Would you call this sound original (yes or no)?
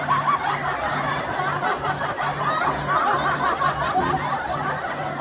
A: yes